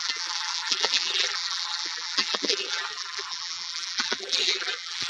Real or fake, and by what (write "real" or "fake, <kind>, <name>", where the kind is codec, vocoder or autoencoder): fake, vocoder, BigVGAN v2